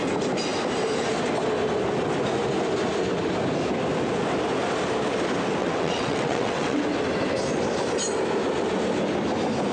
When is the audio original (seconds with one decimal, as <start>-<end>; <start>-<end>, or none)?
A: 0.0-5.6; 6.8-9.7